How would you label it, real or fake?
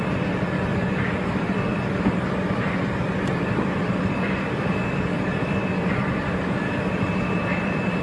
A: fake